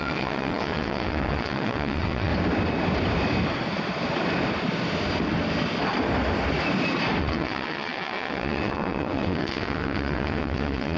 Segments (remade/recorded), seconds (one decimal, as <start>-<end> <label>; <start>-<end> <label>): 0.0-2.3 remade; 2.3-7.2 recorded; 7.2-11.0 remade